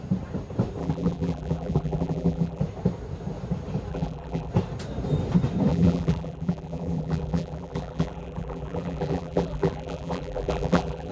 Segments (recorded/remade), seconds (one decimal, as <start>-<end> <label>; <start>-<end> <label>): 0.0-0.8 recorded; 0.8-2.6 remade; 2.6-3.9 recorded; 3.9-4.5 remade; 4.5-5.7 recorded; 5.7-11.1 remade